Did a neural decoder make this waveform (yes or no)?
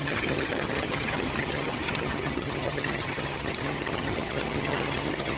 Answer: yes